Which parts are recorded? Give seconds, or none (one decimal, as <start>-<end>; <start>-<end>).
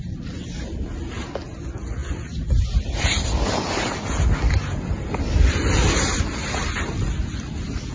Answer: 0.0-7.9